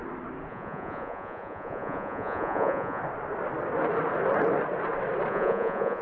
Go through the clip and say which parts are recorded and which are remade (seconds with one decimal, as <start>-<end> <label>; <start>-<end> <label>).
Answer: 0.0-0.5 recorded; 0.5-3.0 remade; 3.0-5.3 recorded; 5.3-6.0 remade